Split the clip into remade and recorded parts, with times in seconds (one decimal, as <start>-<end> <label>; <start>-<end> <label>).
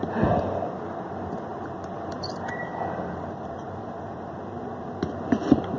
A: 0.0-1.5 recorded; 1.5-2.3 remade; 2.3-2.7 recorded; 2.7-4.9 remade; 4.9-5.8 recorded